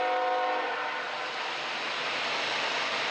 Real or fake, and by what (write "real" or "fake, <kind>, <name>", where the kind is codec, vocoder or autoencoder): real